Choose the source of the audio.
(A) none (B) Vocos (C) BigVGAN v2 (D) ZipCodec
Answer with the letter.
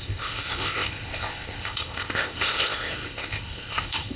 D